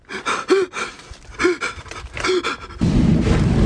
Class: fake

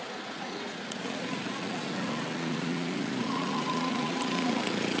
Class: fake